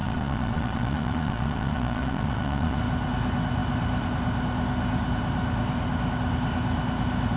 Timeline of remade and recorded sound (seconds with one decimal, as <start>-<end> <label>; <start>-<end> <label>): 0.0-2.8 remade; 2.8-7.4 recorded

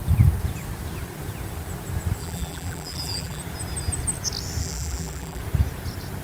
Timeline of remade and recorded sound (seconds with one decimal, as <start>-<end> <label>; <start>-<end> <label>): 0.0-2.2 recorded; 2.2-3.4 remade; 3.4-4.6 recorded; 4.6-5.4 remade; 5.4-6.2 recorded

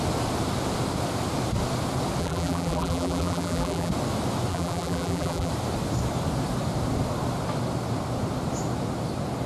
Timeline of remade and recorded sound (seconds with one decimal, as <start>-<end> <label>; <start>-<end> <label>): 0.0-2.2 recorded; 2.2-3.9 remade; 3.9-4.5 recorded; 4.5-5.5 remade; 5.5-9.5 recorded

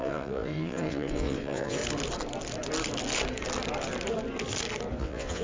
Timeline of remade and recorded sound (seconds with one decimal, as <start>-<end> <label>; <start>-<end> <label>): 0.0-1.8 remade; 1.8-5.0 recorded; 5.0-5.4 remade

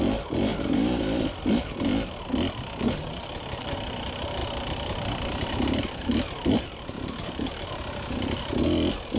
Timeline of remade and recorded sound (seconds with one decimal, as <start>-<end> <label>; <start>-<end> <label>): 0.0-0.5 recorded; 0.5-1.7 remade; 1.7-4.4 recorded; 4.4-6.5 remade; 6.5-9.2 recorded

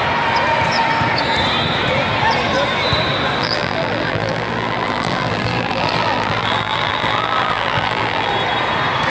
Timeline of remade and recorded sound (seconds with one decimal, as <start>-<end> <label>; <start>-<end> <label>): 0.0-3.4 recorded; 3.4-8.3 remade; 8.3-9.1 recorded

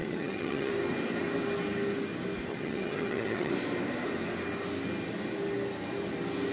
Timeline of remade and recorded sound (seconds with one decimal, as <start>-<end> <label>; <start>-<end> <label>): 0.0-0.7 remade; 0.7-2.5 recorded; 2.5-3.5 remade; 3.5-6.5 recorded